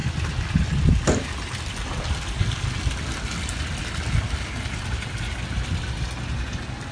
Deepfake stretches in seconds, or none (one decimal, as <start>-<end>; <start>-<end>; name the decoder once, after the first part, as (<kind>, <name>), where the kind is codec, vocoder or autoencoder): none